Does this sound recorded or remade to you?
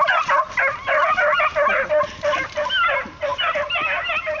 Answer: recorded